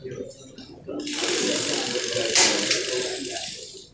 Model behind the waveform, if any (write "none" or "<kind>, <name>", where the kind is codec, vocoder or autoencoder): none